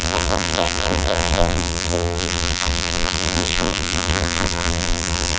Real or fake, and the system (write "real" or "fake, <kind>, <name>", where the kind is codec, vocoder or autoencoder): fake, vocoder, BigVGAN v2